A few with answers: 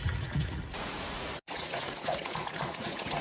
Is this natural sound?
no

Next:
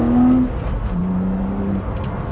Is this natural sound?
yes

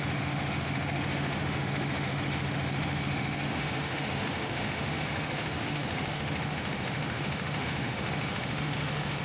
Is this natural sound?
no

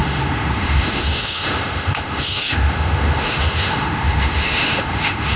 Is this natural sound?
no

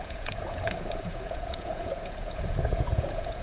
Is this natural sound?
no